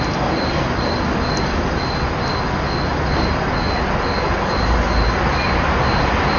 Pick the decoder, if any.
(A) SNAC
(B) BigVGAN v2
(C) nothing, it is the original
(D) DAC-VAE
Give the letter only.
C